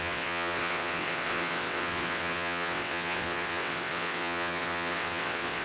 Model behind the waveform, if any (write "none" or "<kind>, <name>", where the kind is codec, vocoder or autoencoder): vocoder, WaveNeXt